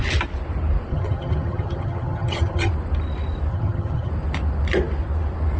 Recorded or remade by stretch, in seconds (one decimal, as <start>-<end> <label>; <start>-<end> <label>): 0.0-0.9 recorded; 0.9-2.7 remade; 2.7-3.5 recorded; 3.5-4.1 remade; 4.1-5.6 recorded